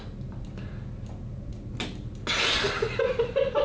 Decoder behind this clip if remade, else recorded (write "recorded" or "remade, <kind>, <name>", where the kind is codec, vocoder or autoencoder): recorded